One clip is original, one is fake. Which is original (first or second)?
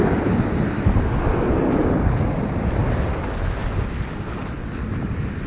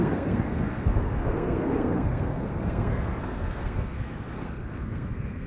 first